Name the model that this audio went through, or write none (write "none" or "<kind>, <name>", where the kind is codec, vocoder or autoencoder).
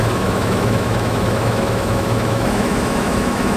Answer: autoencoder, DAC-VAE